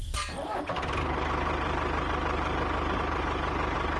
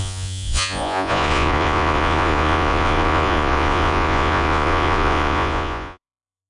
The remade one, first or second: second